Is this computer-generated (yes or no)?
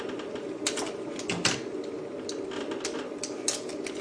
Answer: no